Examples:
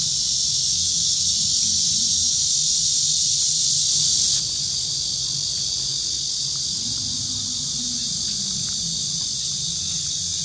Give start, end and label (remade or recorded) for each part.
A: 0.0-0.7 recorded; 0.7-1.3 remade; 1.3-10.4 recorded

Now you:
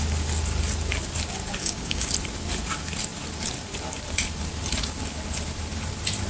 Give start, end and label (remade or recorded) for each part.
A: 0.0-1.6 recorded; 1.6-2.1 remade; 2.1-6.3 recorded